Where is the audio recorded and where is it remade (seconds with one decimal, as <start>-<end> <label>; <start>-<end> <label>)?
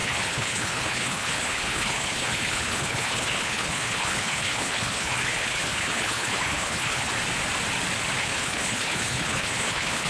0.0-7.1 remade; 7.1-8.2 recorded; 8.2-10.1 remade